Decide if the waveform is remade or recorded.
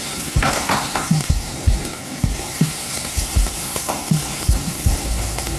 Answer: remade